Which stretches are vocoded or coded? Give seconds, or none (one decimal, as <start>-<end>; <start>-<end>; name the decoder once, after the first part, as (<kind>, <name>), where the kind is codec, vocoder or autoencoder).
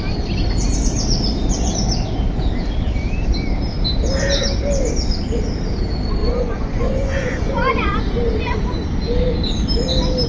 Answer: 6.2-8.0 (vocoder, Vocos)